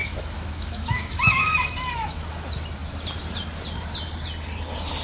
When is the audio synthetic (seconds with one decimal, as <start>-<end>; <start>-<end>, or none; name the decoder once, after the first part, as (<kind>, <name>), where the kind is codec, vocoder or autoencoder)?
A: 0.0-2.2 (autoencoder, DAC-VAE)